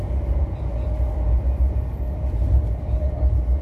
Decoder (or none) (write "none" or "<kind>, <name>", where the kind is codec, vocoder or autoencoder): vocoder, BigVGAN v2